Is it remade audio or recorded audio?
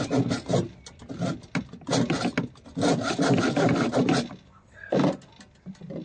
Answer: recorded